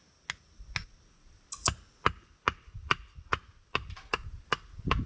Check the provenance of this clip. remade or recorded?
recorded